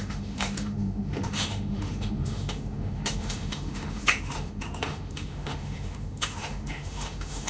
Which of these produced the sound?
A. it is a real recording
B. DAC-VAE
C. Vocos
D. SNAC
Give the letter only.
B